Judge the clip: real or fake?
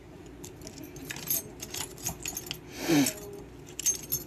real